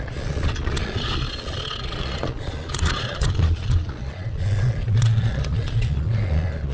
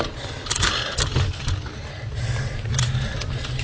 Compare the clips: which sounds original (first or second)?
second